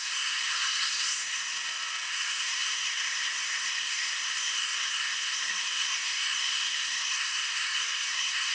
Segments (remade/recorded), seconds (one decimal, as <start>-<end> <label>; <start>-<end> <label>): 0.0-1.5 remade; 1.5-2.1 recorded; 2.1-8.5 remade